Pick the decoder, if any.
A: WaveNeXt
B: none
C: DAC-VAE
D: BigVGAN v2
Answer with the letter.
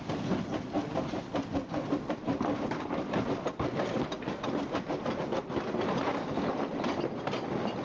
B